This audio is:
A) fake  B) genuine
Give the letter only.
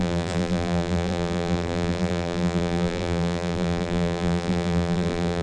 A